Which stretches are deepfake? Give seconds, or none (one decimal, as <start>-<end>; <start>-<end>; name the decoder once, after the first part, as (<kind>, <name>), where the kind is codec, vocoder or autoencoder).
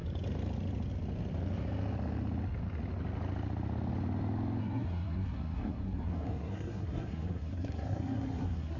4.6-8.8 (codec, SNAC)